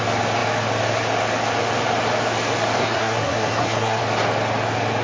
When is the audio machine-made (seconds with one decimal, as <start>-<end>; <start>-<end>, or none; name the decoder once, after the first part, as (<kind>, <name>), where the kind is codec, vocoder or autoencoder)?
2.8-4.0 (codec, SNAC)